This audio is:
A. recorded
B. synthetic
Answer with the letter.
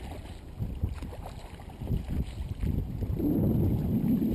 A